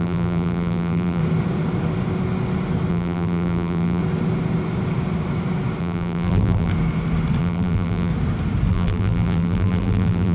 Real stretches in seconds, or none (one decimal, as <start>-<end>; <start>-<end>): 1.2-2.9; 4.0-5.8; 6.7-7.4; 8.1-8.7